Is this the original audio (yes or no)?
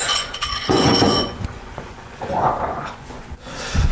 no